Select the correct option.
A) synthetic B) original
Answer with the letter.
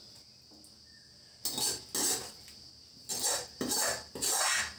B